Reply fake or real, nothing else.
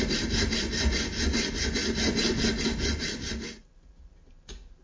real